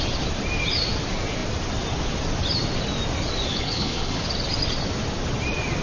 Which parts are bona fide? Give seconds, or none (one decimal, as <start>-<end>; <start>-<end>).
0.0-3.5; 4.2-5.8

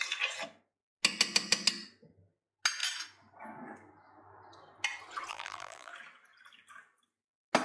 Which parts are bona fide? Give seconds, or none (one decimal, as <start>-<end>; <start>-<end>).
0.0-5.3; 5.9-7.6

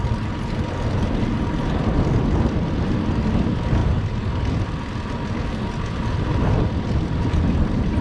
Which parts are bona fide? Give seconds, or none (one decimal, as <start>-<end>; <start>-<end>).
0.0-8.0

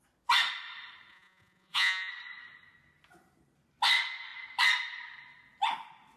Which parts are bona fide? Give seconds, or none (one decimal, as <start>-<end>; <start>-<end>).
0.0-1.1; 2.1-6.2

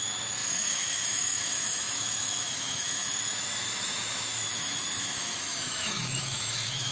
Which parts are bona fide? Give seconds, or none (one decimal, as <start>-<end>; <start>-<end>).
none

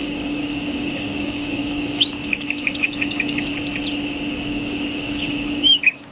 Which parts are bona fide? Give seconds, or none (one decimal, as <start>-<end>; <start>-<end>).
3.5-4.3